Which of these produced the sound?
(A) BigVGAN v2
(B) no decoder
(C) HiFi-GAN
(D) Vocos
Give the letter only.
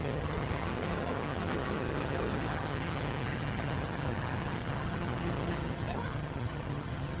C